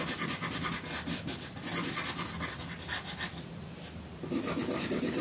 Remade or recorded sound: recorded